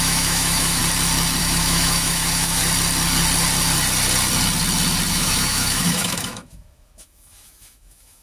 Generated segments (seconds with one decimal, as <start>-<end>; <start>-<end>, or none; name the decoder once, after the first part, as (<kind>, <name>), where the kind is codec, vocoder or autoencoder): 0.0-0.8 (autoencoder, DAC-VAE); 1.4-2.6; 5.1-8.2